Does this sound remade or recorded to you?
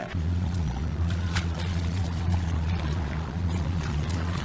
remade